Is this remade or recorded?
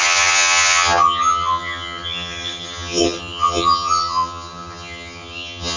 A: remade